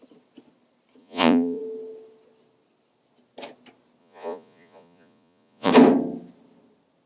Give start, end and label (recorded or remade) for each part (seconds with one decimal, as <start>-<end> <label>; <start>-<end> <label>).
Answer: 0.0-1.0 recorded; 1.0-1.6 remade; 1.6-4.0 recorded; 4.0-5.7 remade; 5.7-7.1 recorded